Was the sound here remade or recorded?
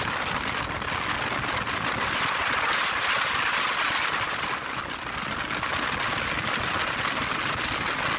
recorded